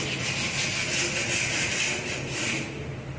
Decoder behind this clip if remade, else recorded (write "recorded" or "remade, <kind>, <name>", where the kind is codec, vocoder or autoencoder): recorded